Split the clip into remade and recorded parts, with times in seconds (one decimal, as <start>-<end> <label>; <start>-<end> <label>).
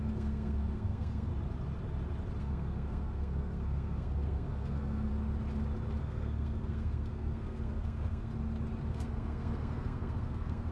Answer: 0.0-1.3 remade; 1.3-2.4 recorded; 2.4-5.1 remade; 5.1-6.0 recorded; 6.0-8.3 remade; 8.3-8.9 recorded; 8.9-10.7 remade